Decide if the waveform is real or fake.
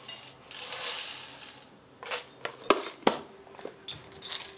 real